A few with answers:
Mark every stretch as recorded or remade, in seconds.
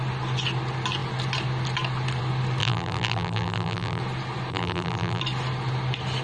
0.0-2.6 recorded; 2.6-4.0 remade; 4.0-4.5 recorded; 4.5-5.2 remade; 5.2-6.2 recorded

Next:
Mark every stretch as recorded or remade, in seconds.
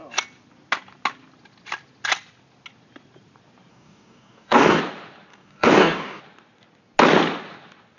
0.0-3.7 recorded; 3.7-4.8 remade; 4.8-5.3 recorded; 5.3-6.2 remade; 6.2-8.0 recorded